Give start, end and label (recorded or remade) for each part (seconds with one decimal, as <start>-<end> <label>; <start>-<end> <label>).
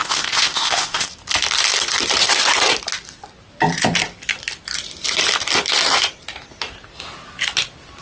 0.0-1.1 remade; 1.1-8.0 recorded